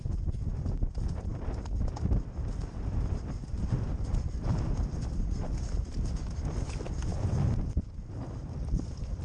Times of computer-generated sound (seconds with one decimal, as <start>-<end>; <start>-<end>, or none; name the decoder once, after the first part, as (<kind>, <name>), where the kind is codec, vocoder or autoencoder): 1.3-5.7 (vocoder, BigVGAN v2)